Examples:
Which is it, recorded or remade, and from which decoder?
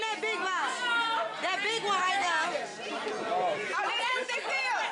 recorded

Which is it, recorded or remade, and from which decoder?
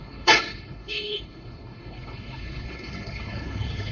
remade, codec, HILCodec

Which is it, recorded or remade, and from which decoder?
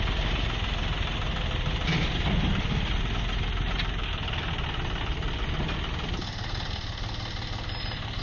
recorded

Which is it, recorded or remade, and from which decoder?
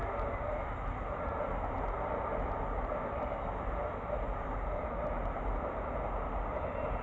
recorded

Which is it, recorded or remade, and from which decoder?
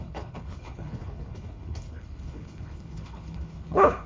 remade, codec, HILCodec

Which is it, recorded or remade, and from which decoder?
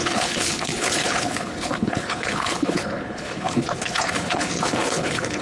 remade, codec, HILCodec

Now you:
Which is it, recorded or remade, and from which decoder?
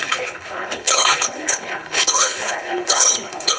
remade, codec, HILCodec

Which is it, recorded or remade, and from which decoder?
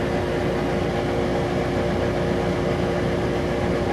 recorded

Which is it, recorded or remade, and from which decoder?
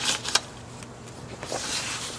recorded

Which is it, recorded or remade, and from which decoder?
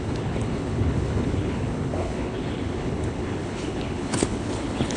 remade, codec, HILCodec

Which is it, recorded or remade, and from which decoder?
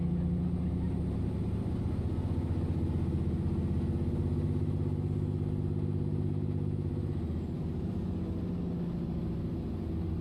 recorded